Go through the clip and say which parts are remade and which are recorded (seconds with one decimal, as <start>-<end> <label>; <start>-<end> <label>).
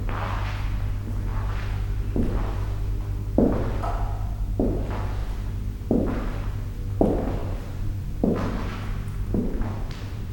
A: 0.0-7.4 recorded; 7.4-8.3 remade; 8.3-9.4 recorded; 9.4-10.3 remade